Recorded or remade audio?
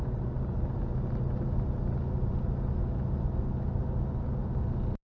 recorded